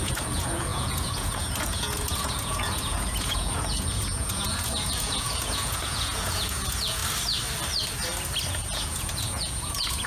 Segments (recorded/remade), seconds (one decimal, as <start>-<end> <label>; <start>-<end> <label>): 0.0-7.0 remade; 7.0-8.5 recorded; 8.5-10.1 remade